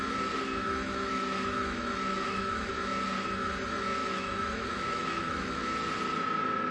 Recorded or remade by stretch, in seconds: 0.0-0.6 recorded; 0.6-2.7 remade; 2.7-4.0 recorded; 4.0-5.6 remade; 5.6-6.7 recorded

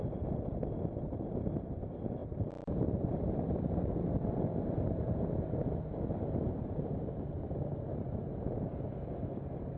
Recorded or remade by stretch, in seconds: 0.0-9.8 recorded

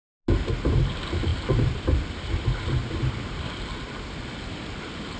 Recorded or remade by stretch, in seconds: 0.0-1.3 recorded; 1.3-4.4 remade; 4.4-5.2 recorded

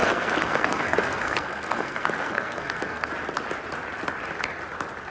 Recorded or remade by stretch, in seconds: 0.0-3.1 remade; 3.1-5.1 recorded

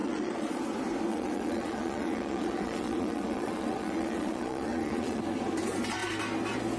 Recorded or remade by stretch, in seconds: 0.0-0.6 remade; 0.6-1.1 recorded; 1.1-5.2 remade; 5.2-6.8 recorded